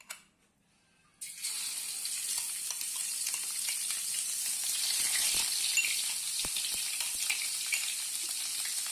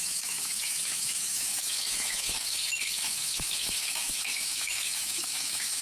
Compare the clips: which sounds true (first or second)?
first